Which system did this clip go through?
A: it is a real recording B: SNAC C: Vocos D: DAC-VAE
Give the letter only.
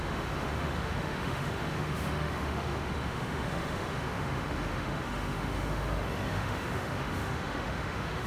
D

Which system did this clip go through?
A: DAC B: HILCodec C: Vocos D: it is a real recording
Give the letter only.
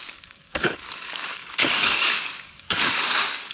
A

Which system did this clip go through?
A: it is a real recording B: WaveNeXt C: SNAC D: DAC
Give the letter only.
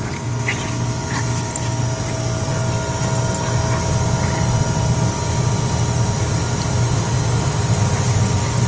A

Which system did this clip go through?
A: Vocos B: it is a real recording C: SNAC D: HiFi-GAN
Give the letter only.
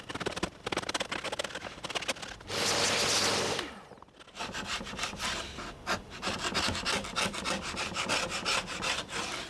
B